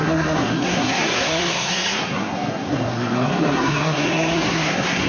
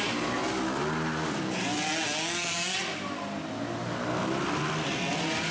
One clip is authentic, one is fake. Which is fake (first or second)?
first